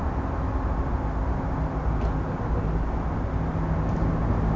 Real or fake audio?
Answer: real